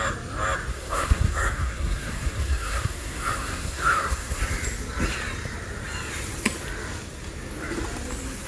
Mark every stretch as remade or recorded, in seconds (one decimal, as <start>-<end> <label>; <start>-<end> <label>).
0.0-0.7 recorded; 0.7-4.4 remade; 4.4-8.5 recorded